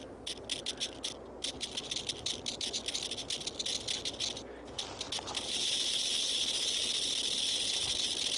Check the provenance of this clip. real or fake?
real